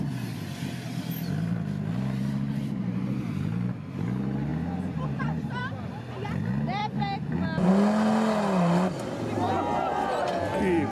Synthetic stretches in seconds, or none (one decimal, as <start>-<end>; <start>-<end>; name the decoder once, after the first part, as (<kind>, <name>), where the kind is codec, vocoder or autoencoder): none